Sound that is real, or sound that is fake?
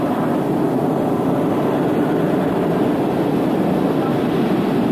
real